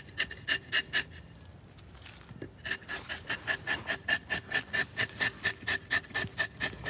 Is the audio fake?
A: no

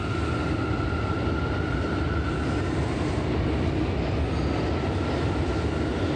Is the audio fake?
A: no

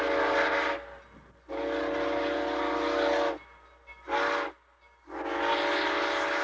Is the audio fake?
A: no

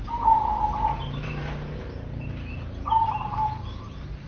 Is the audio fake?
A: yes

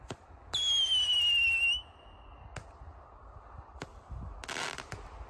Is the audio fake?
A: no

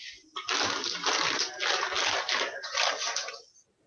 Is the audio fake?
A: no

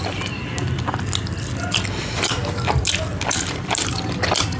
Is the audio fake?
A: no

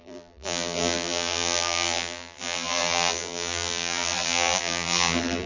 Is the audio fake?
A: yes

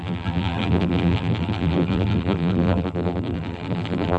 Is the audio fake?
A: yes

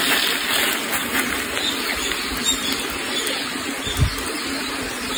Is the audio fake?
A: no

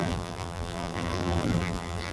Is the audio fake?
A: yes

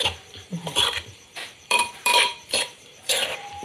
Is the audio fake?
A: yes